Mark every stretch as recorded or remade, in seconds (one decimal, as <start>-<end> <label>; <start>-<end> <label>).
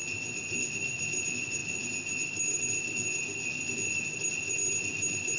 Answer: 0.0-5.4 recorded